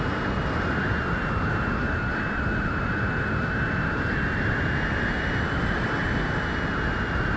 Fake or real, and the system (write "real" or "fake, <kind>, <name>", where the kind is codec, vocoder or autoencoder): real